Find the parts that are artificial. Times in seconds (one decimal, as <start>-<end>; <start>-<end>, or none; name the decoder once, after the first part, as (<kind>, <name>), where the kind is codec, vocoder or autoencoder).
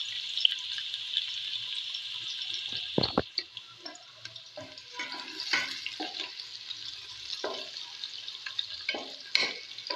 none